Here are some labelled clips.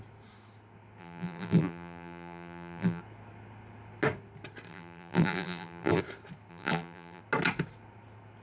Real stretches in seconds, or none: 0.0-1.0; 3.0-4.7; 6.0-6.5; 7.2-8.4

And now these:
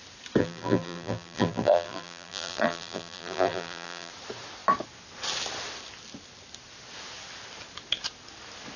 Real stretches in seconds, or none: 0.0-0.4; 4.1-8.8

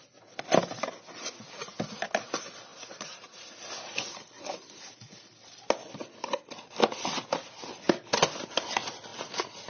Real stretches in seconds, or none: 0.0-2.7; 3.5-9.7

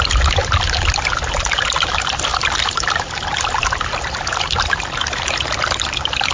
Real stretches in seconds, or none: 0.4-1.6

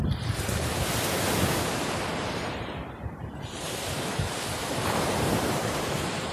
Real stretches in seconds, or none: 0.0-2.1